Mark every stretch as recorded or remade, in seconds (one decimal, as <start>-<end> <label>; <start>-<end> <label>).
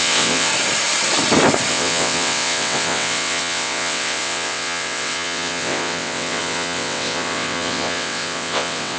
0.0-0.5 remade; 0.5-1.7 recorded; 1.7-9.0 remade